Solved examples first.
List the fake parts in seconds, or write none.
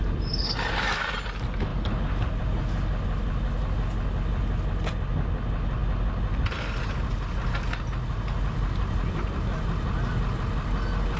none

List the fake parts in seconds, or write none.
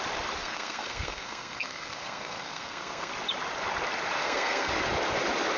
0.4-3.1 (codec, SNAC); 4.2-4.7